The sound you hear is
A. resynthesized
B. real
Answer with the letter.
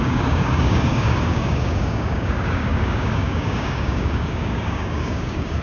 A